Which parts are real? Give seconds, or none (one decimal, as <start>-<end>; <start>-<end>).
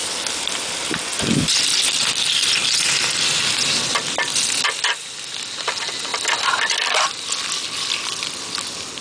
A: 0.0-9.0